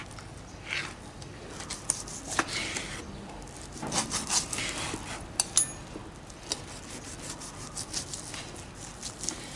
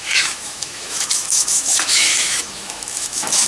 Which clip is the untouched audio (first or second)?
first